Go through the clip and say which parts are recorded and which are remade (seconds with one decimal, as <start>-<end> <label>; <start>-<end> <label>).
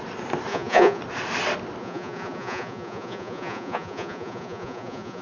0.0-0.5 recorded; 0.5-1.0 remade; 1.0-1.8 recorded; 1.8-5.2 remade